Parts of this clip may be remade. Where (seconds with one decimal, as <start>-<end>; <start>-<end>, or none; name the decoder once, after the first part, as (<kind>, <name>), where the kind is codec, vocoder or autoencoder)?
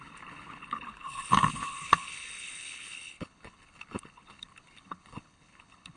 0.0-6.0 (codec, HILCodec)